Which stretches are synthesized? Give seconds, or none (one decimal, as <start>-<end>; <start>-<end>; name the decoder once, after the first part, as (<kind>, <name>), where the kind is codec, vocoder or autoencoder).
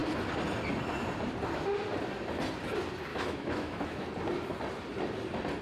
3.1-4.1 (autoencoder, DAC-VAE)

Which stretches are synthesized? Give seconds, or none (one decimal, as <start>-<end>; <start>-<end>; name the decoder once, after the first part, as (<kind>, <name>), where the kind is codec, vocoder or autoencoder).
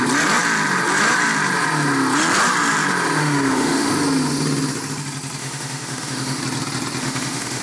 3.2-3.9 (autoencoder, DAC-VAE); 5.4-6.4; 7.0-7.6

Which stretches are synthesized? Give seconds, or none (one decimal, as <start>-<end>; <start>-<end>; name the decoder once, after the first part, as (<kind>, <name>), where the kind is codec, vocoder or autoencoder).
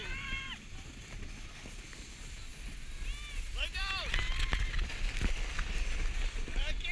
none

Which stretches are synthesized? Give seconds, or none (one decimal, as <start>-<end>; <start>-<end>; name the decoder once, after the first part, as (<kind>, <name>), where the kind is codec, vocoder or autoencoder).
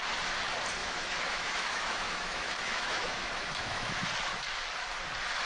0.8-4.1 (autoencoder, DAC-VAE)